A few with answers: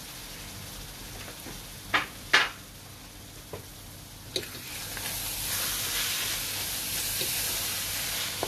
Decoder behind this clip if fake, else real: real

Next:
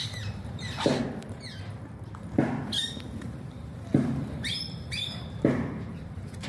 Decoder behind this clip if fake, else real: fake, vocoder, BigVGAN v2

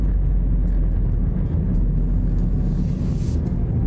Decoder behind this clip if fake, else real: real